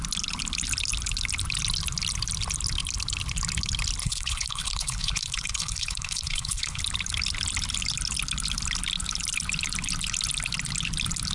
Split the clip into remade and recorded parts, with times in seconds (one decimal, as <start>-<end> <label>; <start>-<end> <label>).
0.0-4.0 recorded; 4.0-6.8 remade; 6.8-11.3 recorded